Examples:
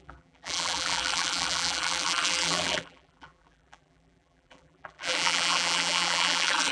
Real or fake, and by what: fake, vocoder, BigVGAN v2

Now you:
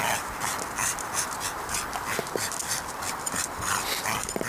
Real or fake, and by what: real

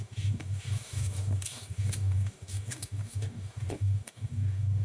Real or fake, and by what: fake, codec, DAC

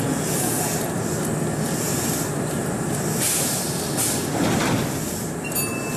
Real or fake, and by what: real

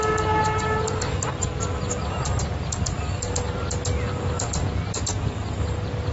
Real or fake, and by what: real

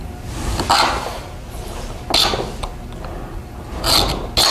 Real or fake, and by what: real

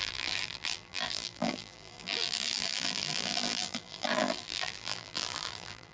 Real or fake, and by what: fake, vocoder, BigVGAN v2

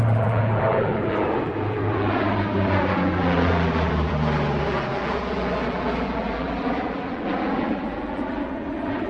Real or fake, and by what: fake, vocoder, BigVGAN v2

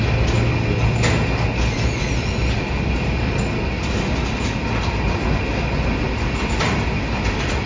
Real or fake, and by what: real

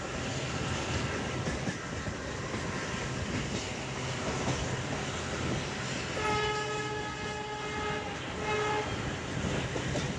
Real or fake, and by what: real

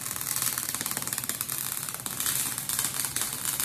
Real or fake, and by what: real